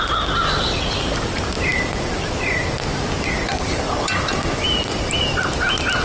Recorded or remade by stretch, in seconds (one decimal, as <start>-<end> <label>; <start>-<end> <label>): 0.0-6.0 recorded